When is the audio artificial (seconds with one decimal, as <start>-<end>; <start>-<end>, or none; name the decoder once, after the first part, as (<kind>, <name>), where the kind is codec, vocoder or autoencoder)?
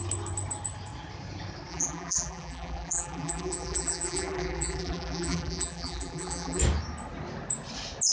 1.7-6.6 (vocoder, BigVGAN v2)